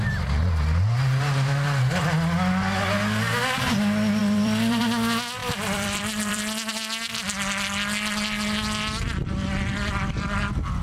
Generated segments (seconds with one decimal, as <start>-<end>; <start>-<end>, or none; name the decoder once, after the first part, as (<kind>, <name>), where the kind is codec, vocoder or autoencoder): 4.2-4.8 (vocoder, BigVGAN v2); 5.4-6.7